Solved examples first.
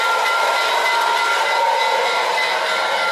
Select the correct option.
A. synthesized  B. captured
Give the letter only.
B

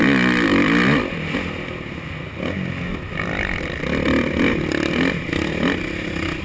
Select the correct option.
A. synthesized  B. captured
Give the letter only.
B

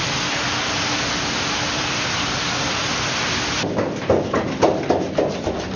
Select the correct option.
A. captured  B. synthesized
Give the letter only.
A